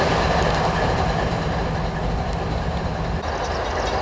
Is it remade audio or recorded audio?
recorded